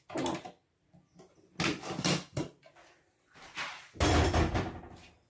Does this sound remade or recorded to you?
recorded